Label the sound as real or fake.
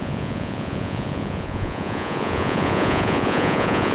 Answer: fake